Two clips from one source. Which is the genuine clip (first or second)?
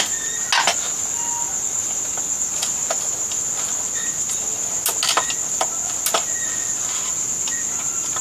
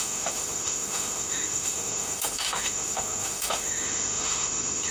first